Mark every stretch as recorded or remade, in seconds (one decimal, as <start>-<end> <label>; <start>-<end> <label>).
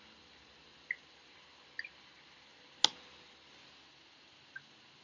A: 0.0-5.0 recorded